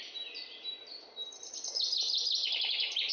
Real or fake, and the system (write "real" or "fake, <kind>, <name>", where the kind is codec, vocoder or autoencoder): real